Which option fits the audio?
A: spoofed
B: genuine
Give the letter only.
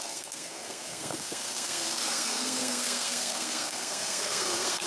A